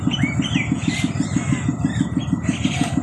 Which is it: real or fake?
real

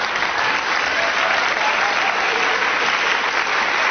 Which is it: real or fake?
real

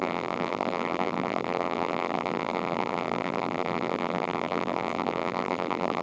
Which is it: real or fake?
fake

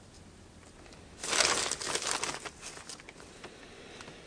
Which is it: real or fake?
real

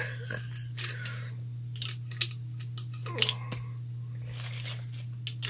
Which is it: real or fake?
real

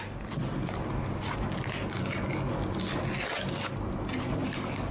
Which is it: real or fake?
real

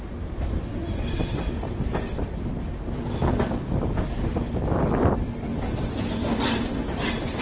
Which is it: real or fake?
real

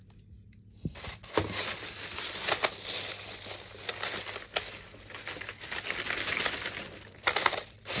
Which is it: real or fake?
real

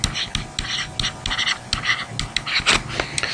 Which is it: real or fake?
real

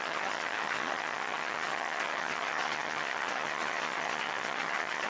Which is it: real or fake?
fake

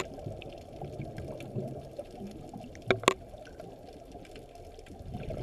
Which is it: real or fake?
real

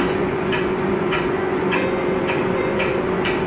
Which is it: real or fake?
fake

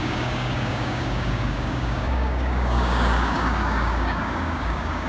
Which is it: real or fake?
fake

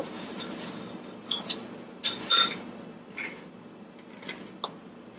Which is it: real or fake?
real